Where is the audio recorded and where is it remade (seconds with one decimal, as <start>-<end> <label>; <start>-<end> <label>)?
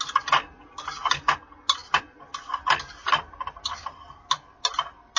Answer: 0.0-5.2 recorded